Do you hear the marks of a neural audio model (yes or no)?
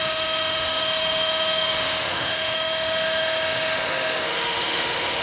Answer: yes